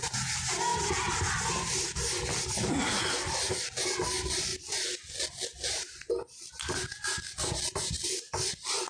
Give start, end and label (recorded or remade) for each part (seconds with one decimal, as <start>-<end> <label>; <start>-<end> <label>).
0.0-0.7 recorded; 0.7-3.8 remade; 3.8-8.9 recorded